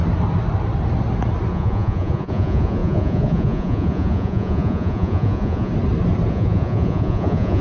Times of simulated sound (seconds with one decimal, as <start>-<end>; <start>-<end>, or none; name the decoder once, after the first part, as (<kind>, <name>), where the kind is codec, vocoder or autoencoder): 1.5-5.7 (vocoder, Vocos); 6.3-7.6